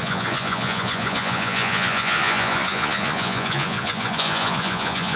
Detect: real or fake fake